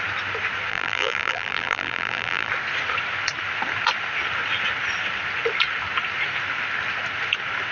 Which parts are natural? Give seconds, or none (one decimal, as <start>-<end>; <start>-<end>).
0.0-0.7; 2.5-7.7